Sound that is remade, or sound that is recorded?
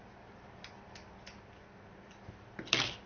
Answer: recorded